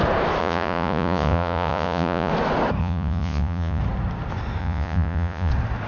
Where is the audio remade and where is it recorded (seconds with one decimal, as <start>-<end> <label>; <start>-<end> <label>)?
0.0-0.4 recorded; 0.4-2.3 remade; 2.3-2.8 recorded; 2.8-3.8 remade; 3.8-4.6 recorded; 4.6-5.5 remade; 5.5-5.9 recorded